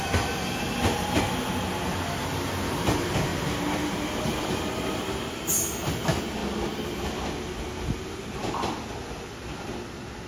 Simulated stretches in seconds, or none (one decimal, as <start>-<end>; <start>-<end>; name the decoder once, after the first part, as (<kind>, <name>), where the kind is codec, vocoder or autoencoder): none